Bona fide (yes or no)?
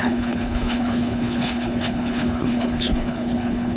no